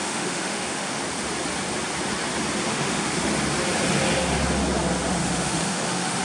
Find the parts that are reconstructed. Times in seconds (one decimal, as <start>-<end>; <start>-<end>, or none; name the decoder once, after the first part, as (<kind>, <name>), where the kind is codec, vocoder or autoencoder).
0.0-1.0 (autoencoder, DAC-VAE); 2.7-3.3; 5.2-6.2